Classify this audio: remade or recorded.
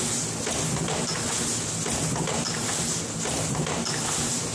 recorded